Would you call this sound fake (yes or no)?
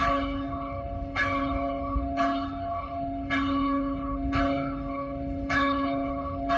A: yes